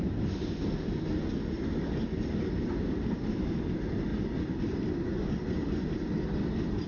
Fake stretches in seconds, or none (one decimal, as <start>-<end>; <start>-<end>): none